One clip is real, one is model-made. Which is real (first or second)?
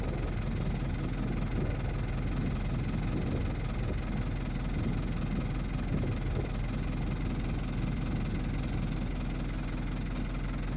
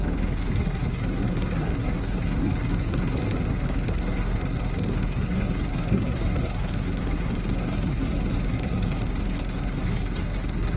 first